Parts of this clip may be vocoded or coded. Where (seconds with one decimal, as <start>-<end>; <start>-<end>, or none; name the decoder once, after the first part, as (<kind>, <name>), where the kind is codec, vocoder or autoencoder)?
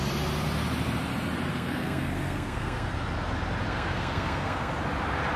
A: 1.5-2.9 (codec, SNAC); 3.7-4.7